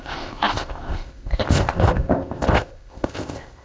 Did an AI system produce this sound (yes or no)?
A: yes